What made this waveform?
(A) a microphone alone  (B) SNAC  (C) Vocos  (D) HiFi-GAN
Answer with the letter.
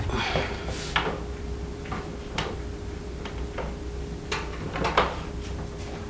A